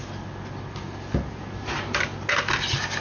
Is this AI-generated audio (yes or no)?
no